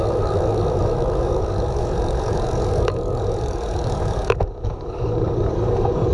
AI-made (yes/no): yes